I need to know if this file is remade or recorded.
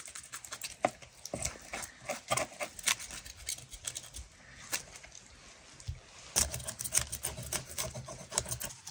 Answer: recorded